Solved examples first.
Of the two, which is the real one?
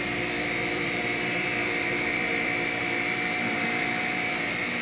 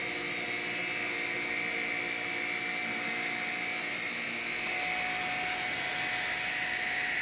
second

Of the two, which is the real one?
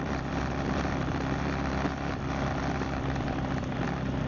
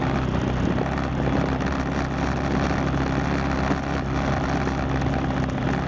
second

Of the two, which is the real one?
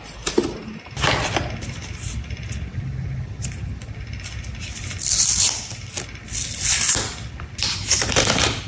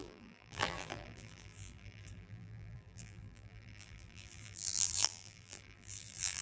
first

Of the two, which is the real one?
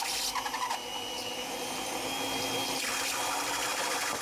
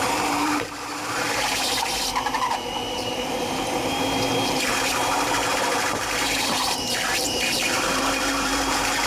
first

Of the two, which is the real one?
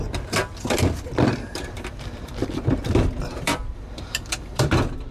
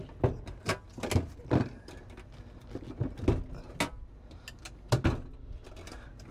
second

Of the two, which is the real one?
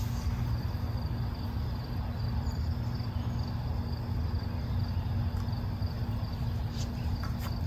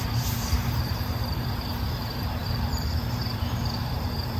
first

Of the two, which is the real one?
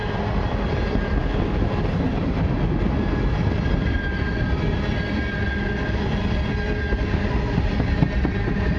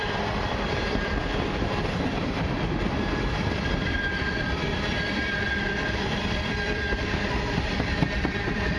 first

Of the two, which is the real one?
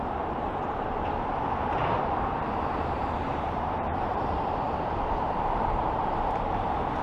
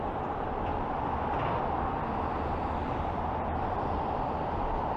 second